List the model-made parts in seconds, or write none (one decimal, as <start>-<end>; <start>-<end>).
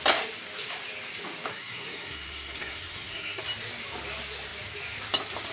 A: 1.5-3.4